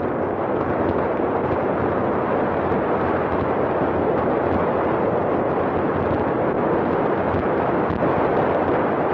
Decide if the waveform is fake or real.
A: real